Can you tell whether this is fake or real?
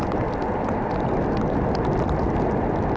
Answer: fake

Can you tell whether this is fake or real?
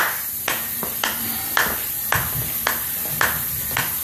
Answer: fake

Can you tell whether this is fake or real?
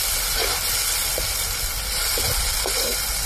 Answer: fake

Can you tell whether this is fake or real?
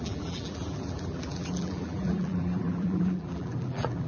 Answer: fake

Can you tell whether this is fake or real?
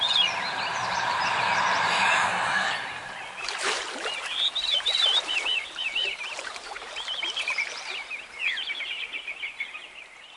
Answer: fake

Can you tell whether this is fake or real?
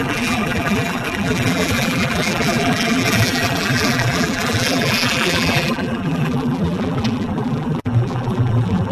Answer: fake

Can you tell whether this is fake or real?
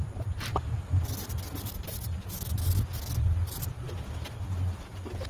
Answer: real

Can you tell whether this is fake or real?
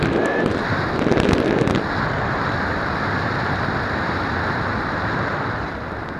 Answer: fake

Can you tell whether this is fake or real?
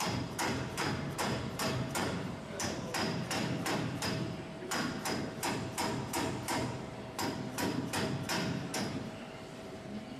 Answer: fake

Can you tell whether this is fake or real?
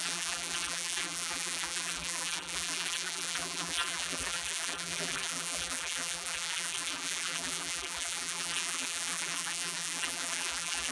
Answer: fake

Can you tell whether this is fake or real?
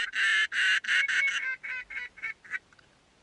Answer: fake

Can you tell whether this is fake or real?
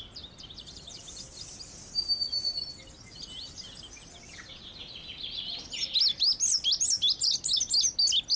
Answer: real